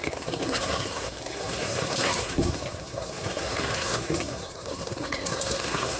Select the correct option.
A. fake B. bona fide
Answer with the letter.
A